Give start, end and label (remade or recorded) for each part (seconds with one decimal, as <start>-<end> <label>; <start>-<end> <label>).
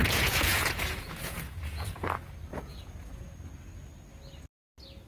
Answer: 0.0-2.0 remade; 2.0-2.5 recorded; 2.5-3.3 remade; 3.3-5.1 recorded